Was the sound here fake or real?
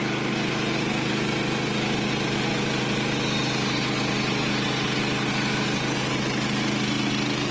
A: real